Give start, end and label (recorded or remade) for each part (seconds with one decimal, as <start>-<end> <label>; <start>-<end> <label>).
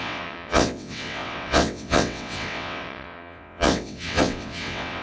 0.0-5.0 remade